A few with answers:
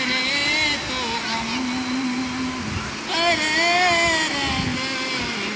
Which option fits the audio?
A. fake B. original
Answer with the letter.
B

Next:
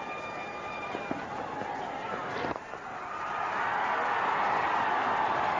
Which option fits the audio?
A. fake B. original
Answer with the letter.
B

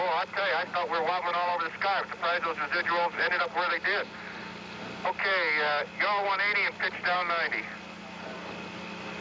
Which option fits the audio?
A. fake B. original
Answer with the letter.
B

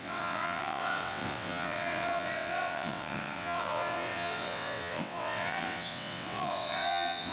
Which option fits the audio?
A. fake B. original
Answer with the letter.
A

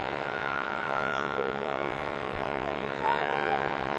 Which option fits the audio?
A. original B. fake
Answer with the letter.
B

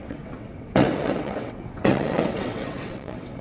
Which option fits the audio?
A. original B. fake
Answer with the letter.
B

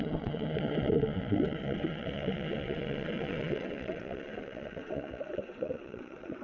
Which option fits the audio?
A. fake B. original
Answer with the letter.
A